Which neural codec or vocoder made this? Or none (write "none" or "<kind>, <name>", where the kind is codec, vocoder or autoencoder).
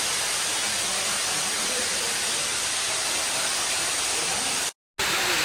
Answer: none